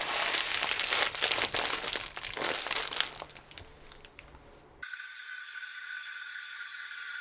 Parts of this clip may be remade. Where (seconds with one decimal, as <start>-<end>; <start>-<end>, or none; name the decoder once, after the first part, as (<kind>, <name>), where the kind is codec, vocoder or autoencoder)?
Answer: none